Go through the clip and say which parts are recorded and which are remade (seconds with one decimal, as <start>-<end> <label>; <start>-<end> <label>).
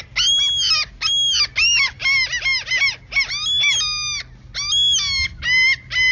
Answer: 0.0-6.1 recorded